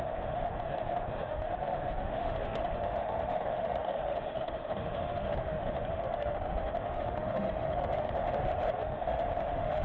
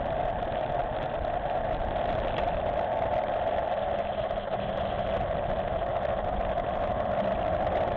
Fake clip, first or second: first